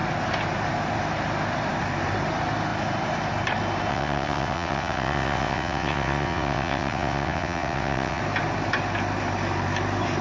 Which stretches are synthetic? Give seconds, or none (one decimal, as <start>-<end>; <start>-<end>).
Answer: 3.9-8.2